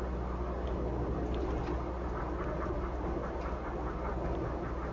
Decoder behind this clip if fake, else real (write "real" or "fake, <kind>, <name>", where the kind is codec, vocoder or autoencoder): real